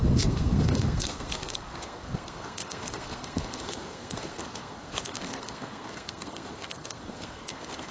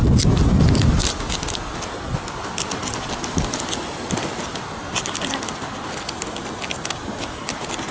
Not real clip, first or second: first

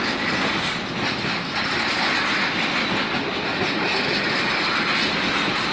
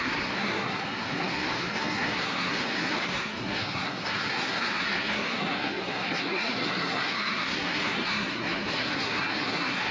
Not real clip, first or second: second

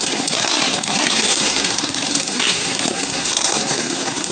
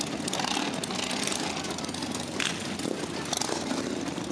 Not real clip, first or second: first